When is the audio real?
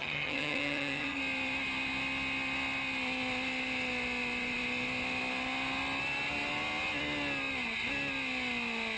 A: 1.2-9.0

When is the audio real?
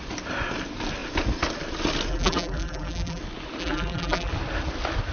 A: 0.0-2.1; 3.2-3.6; 4.3-5.1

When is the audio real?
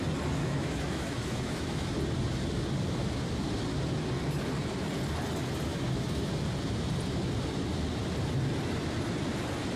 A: 0.0-0.4; 1.9-5.7; 6.3-9.8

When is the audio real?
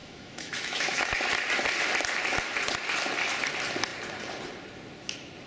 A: 1.2-5.5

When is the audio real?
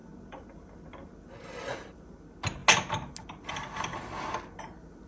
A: 0.0-5.1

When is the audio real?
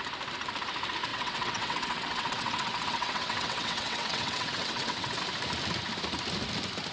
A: 0.0-1.1; 5.2-6.9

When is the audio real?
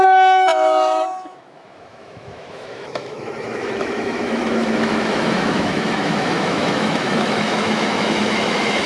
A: none